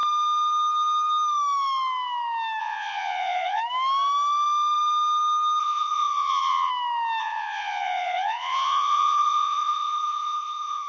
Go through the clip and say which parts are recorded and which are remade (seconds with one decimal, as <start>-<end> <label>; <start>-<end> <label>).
0.0-2.6 recorded; 2.6-3.6 remade; 3.6-5.6 recorded; 5.6-6.7 remade; 6.7-7.2 recorded; 7.2-10.9 remade